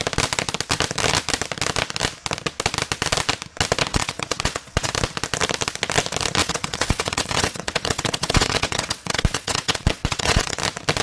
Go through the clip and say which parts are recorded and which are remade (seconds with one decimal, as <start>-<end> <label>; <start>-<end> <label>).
0.0-3.9 recorded; 3.9-4.9 remade; 4.9-6.4 recorded; 6.4-10.6 remade; 10.6-11.0 recorded